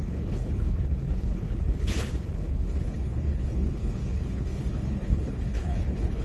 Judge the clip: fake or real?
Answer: fake